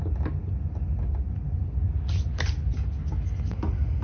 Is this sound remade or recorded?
recorded